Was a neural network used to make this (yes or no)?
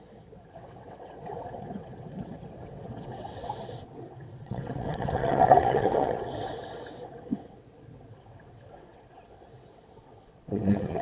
yes